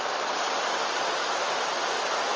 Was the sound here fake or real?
real